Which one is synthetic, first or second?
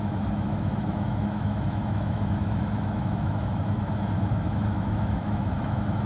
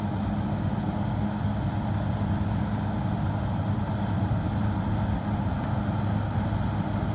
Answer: first